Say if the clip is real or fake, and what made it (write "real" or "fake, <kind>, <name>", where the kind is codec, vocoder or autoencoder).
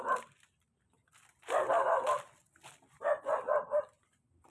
real